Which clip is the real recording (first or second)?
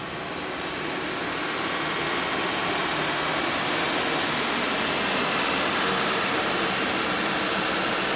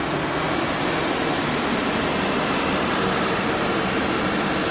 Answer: first